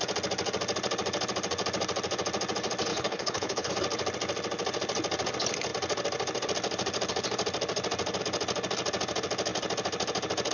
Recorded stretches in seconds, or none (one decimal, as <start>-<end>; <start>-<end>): 0.0-2.9; 3.7-10.5